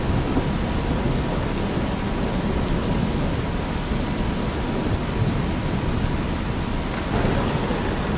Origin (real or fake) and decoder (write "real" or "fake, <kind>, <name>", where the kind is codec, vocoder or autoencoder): real